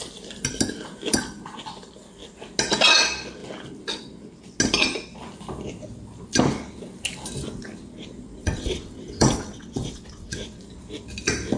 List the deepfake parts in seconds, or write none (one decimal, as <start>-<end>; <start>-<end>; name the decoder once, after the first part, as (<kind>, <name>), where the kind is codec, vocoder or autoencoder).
8.4-10.6 (vocoder, WaveNeXt)